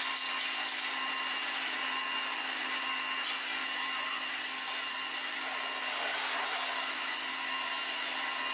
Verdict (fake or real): real